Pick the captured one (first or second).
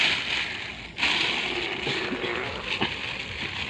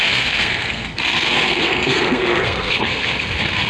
first